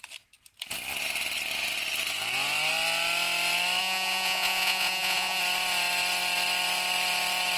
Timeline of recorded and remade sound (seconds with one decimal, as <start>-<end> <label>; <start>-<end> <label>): 0.0-3.8 recorded; 3.8-5.4 remade; 5.4-7.6 recorded